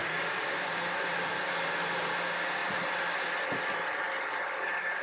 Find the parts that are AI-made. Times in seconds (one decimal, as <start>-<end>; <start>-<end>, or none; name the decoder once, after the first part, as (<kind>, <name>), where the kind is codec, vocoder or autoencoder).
0.0-1.4 (vocoder, BigVGAN v2)